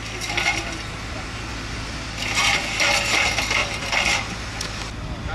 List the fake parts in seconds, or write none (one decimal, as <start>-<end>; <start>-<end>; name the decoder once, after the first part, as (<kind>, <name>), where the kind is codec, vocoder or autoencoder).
none